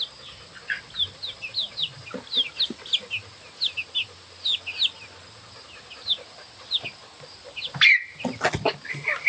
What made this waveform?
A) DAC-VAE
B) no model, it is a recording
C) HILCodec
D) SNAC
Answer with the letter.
B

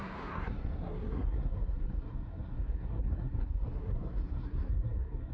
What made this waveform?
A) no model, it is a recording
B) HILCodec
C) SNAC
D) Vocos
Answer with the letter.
C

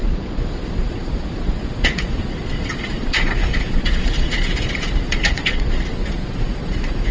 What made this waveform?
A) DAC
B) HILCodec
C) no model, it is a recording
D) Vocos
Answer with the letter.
D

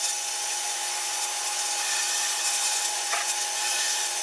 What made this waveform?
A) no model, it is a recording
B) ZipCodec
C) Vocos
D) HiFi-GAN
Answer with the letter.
C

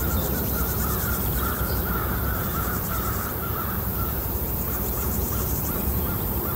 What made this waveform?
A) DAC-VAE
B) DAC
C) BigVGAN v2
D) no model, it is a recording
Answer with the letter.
C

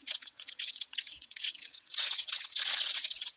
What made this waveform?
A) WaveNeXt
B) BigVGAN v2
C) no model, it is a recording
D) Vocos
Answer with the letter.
A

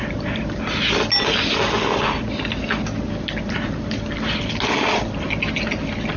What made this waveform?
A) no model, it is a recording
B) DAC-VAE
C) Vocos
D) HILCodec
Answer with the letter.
A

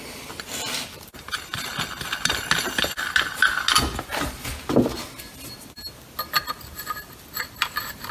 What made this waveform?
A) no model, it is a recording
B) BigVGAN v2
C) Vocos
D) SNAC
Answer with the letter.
A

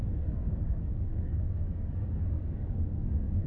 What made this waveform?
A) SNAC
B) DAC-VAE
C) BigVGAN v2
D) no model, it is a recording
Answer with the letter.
A